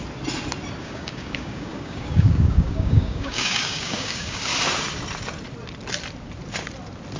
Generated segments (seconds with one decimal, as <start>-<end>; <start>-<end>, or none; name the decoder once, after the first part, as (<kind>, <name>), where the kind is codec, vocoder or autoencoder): 0.8-4.5 (codec, DAC)